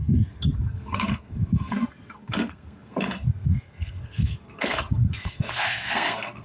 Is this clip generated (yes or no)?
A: yes